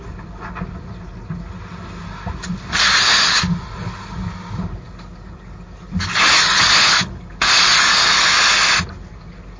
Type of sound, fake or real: real